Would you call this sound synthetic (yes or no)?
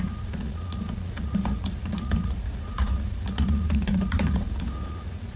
yes